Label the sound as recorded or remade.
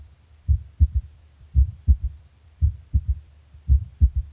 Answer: remade